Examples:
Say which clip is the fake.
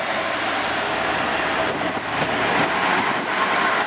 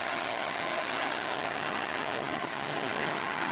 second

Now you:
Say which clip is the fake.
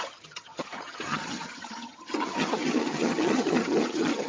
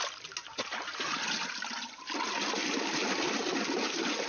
first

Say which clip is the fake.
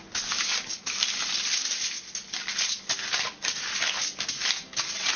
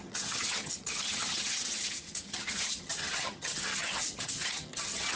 second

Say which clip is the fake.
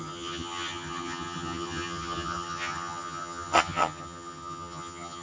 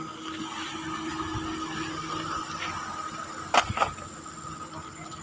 first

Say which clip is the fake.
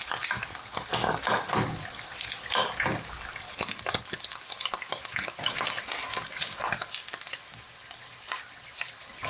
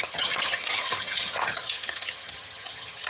second